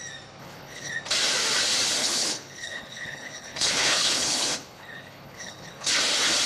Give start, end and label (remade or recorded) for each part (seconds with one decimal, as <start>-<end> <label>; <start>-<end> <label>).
0.0-0.4 recorded; 0.4-0.9 remade; 0.9-2.0 recorded; 2.0-5.9 remade; 5.9-6.5 recorded